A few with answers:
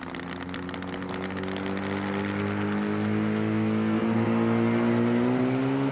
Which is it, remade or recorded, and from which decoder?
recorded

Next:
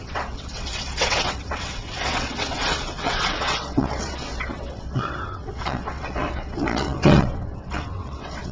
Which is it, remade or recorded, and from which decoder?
remade, vocoder, WaveNeXt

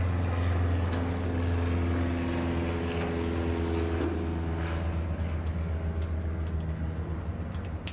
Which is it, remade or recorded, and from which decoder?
recorded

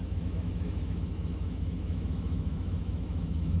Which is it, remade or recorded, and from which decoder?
remade, autoencoder, DAC-VAE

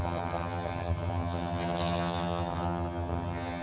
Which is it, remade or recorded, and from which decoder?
remade, vocoder, HiFi-GAN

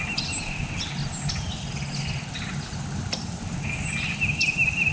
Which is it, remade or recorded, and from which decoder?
recorded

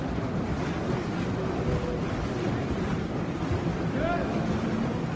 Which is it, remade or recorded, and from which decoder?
recorded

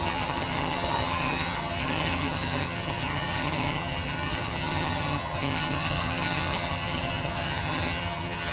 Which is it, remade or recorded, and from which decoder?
remade, vocoder, HiFi-GAN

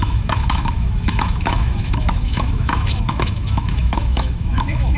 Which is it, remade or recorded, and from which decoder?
remade, autoencoder, DAC-VAE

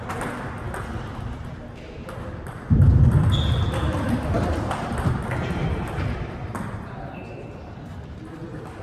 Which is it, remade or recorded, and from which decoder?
recorded